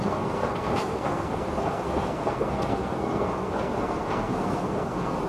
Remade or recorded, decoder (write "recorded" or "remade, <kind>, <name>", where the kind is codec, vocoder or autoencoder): remade, codec, SNAC